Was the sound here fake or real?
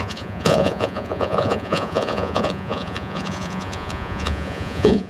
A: fake